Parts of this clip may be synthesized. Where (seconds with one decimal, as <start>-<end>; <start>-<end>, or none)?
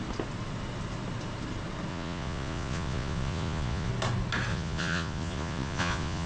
1.9-3.9; 4.5-6.3